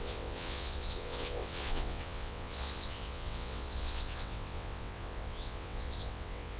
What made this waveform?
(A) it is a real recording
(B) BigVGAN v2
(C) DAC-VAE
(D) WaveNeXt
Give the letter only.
D